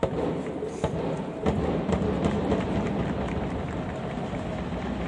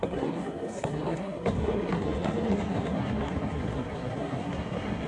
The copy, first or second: second